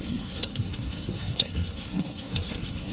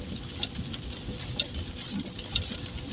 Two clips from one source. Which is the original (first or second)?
second